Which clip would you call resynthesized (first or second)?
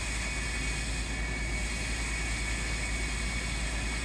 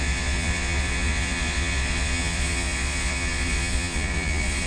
second